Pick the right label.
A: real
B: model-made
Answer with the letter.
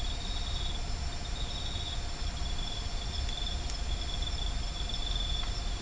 A